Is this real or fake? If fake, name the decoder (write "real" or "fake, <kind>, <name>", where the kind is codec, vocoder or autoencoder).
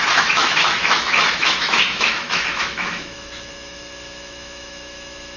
fake, autoencoder, DAC-VAE